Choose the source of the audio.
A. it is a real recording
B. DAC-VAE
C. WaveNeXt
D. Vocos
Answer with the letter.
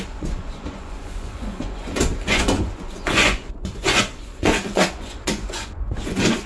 D